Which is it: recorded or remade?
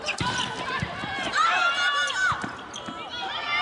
recorded